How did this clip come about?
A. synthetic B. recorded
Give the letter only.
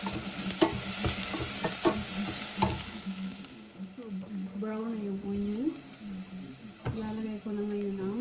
B